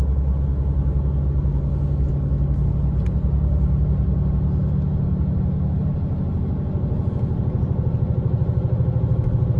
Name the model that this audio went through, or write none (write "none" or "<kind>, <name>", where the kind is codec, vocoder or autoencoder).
none